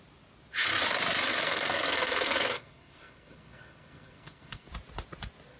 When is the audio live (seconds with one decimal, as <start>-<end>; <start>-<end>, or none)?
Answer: 0.0-1.3; 4.7-5.6